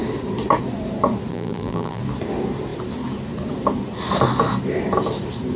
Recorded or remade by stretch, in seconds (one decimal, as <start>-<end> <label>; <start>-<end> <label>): 0.0-1.3 recorded; 1.3-2.0 remade; 2.0-5.6 recorded